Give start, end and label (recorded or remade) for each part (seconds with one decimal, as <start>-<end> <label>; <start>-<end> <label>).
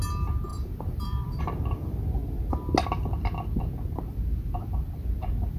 0.0-0.5 recorded; 0.5-1.4 remade; 1.4-5.6 recorded